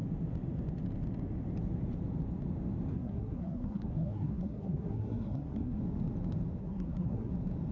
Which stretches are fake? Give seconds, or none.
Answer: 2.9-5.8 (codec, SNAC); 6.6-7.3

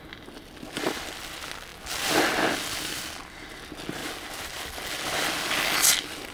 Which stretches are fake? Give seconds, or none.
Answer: none

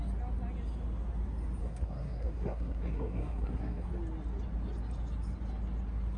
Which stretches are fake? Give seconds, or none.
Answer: 1.6-3.9 (codec, SNAC)

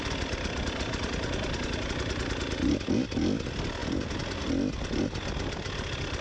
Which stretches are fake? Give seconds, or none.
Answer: none

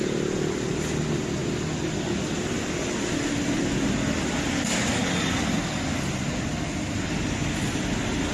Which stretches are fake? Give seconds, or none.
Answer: none